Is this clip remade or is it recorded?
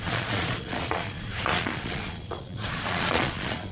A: remade